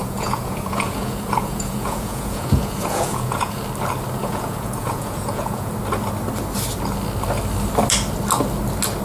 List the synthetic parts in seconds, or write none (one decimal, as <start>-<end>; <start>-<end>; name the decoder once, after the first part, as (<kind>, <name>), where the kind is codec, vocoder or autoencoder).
0.0-3.6 (vocoder, Vocos); 4.2-5.7